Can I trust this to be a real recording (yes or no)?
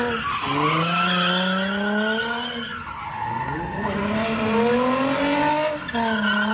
yes